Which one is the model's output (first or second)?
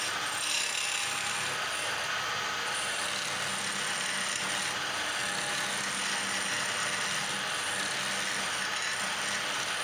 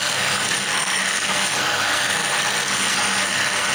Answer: second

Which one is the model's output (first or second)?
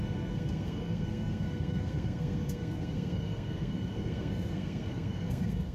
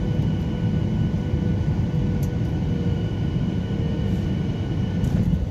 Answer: first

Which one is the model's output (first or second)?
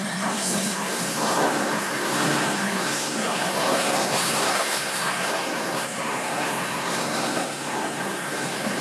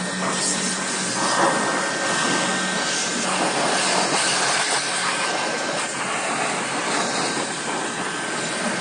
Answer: first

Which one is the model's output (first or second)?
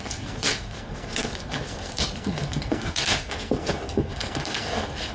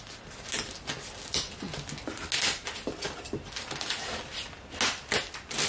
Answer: first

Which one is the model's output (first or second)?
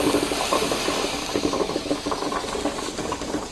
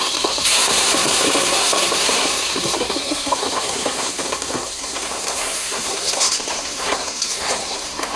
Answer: second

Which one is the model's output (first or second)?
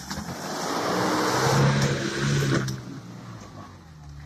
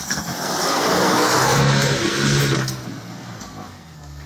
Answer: second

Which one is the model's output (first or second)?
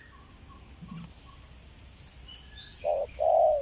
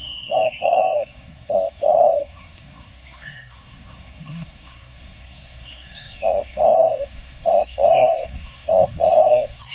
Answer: second